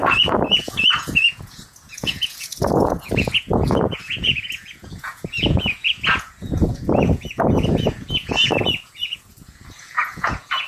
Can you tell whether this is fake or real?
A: fake